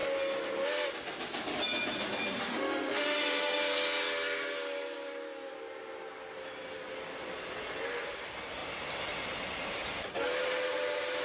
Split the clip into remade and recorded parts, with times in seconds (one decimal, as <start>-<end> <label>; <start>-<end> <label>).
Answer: 0.0-2.4 recorded; 2.4-3.6 remade; 3.6-11.2 recorded